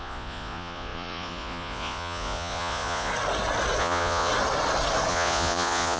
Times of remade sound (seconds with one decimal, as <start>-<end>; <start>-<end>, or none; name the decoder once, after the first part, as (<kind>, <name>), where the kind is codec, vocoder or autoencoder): 0.0-3.1 (vocoder, Vocos); 3.8-4.3; 5.1-6.0